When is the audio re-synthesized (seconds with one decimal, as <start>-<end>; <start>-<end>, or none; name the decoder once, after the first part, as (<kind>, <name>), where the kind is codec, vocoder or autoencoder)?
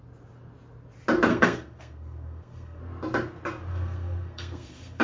1.3-2.8 (codec, SNAC); 3.7-5.0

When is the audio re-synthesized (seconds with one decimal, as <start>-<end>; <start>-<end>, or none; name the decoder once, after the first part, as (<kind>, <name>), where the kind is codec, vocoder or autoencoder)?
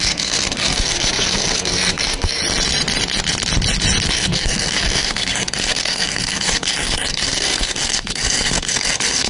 0.0-2.4 (codec, SNAC); 4.1-9.3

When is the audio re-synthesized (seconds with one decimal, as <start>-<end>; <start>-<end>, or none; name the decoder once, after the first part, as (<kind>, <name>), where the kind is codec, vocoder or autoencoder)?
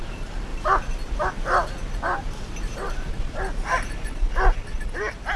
none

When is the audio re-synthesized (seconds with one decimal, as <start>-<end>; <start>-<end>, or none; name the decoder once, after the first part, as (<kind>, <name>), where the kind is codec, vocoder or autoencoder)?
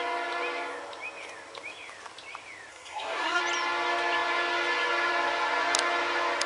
2.7-3.4 (codec, SNAC)